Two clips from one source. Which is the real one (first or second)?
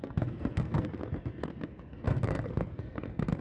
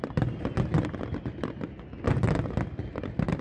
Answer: second